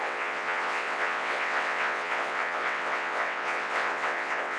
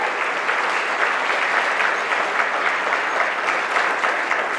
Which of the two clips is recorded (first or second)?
second